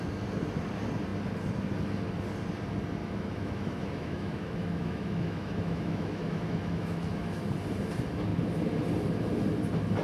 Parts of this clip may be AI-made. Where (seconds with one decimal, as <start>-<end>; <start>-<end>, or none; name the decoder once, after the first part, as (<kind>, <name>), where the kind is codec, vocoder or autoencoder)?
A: 3.0-7.4 (autoencoder, DAC-VAE)